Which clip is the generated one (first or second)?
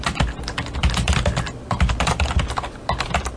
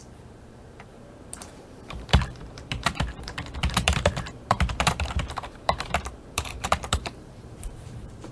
second